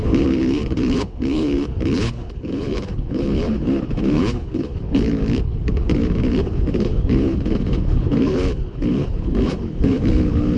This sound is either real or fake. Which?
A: fake